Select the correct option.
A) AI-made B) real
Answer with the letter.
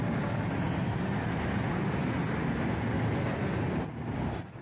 B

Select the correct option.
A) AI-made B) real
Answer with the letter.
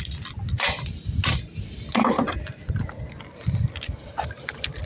B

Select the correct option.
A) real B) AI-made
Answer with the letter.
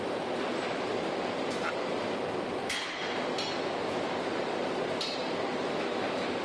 A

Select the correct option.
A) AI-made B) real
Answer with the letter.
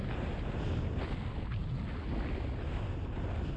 B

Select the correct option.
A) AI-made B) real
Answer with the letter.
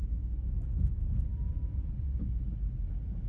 B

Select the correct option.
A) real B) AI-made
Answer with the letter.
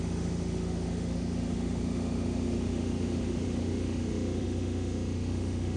B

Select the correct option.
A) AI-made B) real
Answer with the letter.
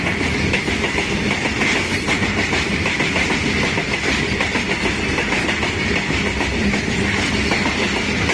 B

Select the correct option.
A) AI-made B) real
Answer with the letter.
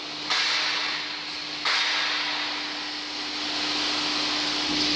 B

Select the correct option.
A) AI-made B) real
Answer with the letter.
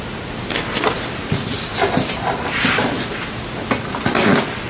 B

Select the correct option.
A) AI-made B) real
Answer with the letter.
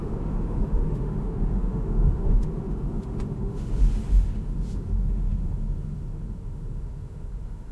A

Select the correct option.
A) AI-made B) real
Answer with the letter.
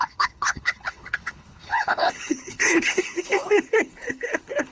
A